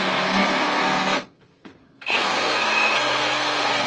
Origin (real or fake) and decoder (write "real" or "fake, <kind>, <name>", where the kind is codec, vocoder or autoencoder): fake, codec, SNAC